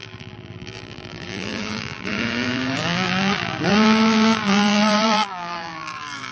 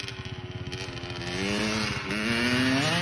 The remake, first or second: first